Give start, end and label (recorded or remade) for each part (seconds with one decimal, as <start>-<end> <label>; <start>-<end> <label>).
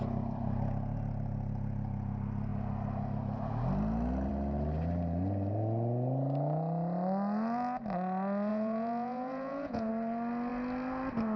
0.0-8.5 recorded; 8.5-9.9 remade; 9.9-11.4 recorded